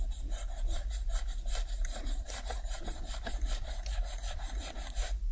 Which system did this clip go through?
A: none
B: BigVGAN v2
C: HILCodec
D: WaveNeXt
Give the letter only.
B